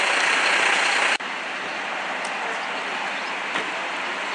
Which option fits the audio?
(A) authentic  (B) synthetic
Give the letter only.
A